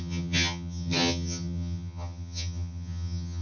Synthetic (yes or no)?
yes